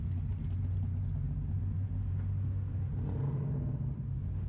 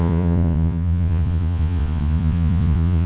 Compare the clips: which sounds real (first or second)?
first